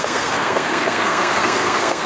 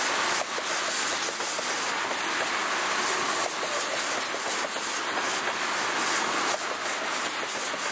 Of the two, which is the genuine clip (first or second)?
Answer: second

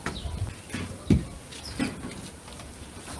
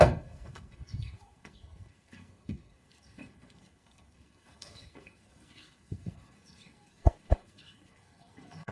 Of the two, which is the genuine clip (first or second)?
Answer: first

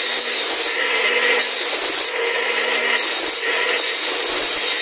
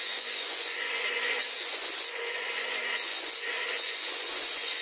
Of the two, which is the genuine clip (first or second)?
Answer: first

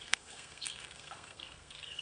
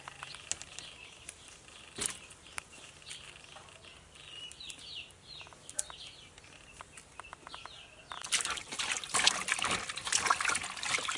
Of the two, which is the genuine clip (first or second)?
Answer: second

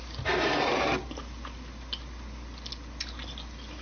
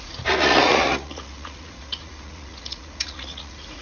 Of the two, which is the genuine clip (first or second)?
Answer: first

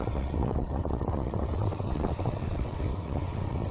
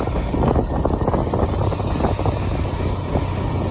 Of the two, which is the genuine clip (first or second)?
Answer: second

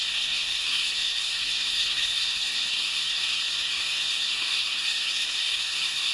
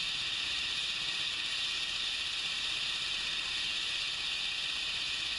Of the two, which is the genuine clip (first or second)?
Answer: second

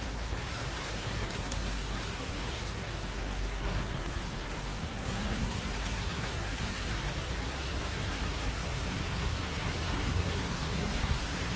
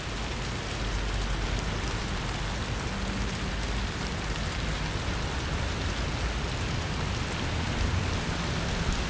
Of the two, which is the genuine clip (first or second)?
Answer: second